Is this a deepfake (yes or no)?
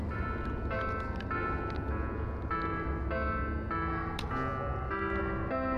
no